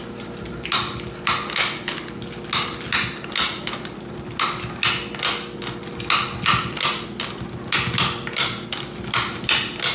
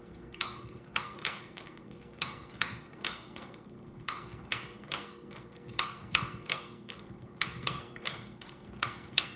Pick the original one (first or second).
first